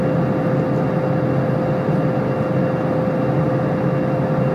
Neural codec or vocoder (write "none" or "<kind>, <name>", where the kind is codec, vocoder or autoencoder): none